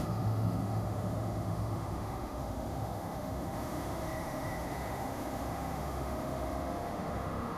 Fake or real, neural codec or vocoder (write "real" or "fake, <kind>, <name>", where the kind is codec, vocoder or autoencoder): fake, autoencoder, DAC-VAE